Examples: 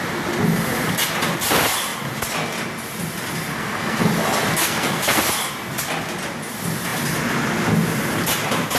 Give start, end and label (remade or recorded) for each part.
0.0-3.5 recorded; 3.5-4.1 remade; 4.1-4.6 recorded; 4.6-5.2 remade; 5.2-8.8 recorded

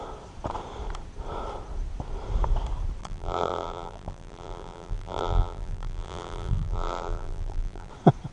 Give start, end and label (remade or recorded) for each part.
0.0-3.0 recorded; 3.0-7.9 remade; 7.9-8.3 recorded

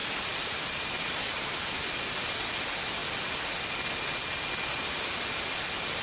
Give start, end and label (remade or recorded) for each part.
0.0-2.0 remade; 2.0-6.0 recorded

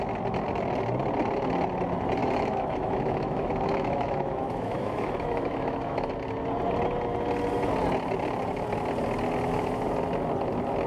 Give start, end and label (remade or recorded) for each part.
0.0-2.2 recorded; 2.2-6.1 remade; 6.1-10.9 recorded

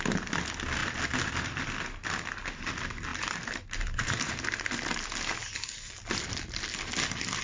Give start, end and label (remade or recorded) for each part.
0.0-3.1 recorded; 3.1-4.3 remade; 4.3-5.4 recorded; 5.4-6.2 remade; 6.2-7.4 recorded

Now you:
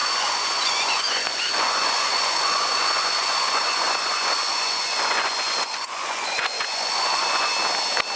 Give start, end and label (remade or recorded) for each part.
0.0-7.5 remade; 7.5-8.2 recorded